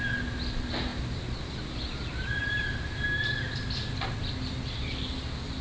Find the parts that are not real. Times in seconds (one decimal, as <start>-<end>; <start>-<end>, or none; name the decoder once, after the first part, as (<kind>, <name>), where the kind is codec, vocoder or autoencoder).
none